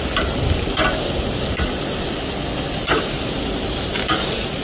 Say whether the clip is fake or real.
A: real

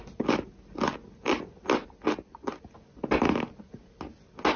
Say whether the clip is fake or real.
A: real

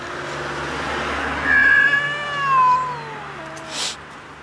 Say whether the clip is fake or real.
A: real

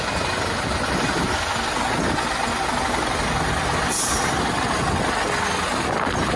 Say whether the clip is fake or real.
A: real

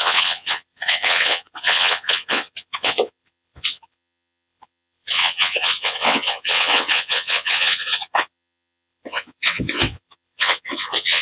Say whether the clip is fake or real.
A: fake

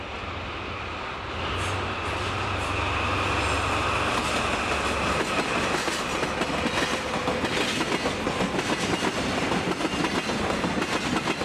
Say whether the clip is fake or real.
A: real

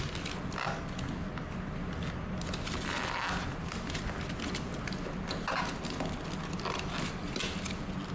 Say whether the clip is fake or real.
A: real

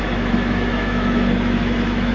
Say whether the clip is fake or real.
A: fake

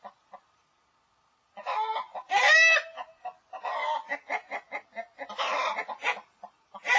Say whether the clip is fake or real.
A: real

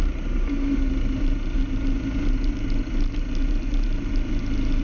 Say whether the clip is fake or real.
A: real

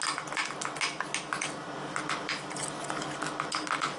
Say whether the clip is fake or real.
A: real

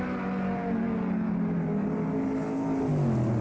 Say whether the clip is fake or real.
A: real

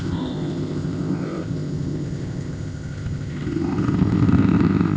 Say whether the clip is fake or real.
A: fake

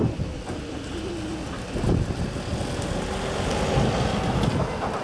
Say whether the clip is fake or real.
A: real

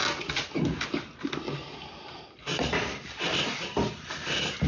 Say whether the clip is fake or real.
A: real